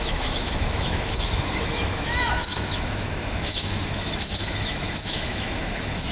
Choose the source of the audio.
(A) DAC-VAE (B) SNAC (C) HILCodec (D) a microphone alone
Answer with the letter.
A